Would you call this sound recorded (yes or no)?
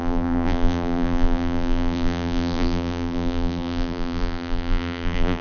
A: no